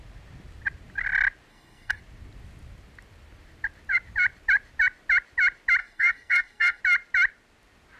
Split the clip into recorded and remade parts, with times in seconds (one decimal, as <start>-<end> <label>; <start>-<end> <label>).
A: 0.0-1.5 recorded; 1.5-2.0 remade; 2.0-5.8 recorded; 5.8-6.8 remade; 6.8-8.0 recorded